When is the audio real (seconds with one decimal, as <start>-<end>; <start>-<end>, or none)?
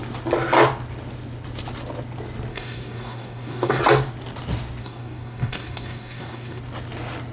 0.0-2.5; 3.8-4.8; 6.6-7.3